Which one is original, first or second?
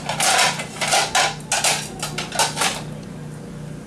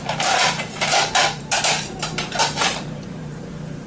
first